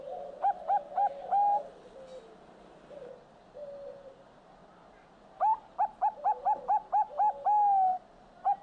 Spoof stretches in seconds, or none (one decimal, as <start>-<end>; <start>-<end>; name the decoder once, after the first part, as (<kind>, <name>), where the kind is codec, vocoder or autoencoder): none

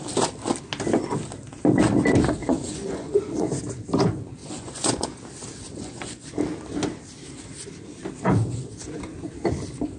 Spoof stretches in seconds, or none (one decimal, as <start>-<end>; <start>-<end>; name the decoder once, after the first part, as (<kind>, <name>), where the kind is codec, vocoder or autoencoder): 2.4-3.6 (vocoder, Vocos); 4.4-5.2; 5.7-6.3

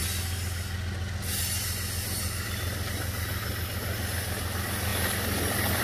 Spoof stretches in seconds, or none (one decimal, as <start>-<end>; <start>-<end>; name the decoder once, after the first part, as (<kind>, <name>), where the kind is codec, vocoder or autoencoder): none

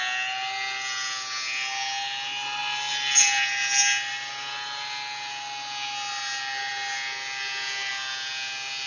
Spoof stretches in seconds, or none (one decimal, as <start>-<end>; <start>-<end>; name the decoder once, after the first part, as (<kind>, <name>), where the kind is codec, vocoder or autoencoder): none

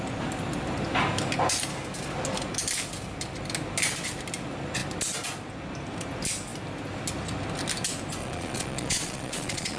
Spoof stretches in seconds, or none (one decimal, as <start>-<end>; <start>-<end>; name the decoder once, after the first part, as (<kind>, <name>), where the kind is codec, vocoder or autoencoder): 8.2-9.8 (vocoder, Vocos)

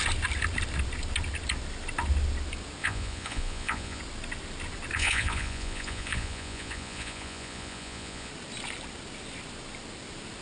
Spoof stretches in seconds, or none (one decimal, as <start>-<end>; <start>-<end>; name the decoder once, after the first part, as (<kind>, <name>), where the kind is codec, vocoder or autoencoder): 2.8-4.0 (vocoder, Vocos); 4.9-8.3

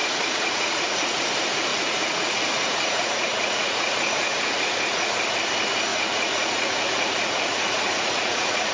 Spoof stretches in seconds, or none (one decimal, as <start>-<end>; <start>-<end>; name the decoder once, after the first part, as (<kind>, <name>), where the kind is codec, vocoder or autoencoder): 0.0-1.2 (vocoder, Vocos); 1.7-5.2; 5.9-8.7

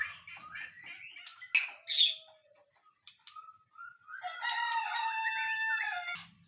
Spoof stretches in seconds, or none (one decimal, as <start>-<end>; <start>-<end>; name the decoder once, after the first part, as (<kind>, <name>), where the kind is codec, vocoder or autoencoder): none